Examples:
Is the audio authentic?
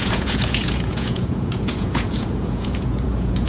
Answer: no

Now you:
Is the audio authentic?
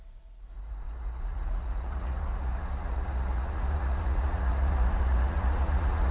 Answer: no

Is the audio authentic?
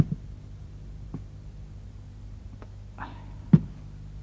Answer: yes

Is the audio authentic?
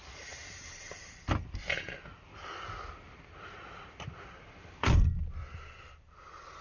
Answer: yes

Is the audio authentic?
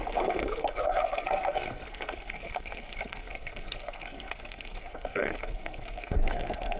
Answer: no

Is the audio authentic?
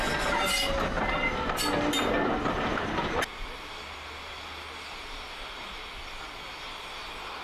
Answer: yes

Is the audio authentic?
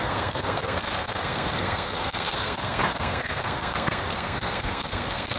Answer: no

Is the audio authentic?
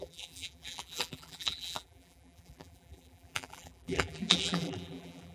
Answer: no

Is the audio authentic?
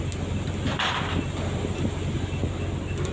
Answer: yes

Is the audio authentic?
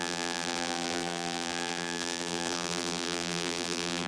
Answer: no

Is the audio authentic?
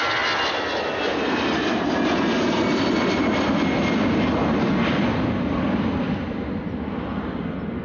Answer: yes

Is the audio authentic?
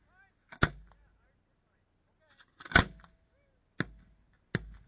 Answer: yes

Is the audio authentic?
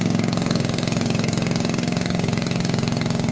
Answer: no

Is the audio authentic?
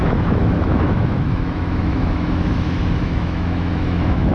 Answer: no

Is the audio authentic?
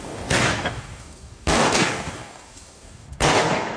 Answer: no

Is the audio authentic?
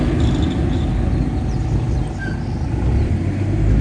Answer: yes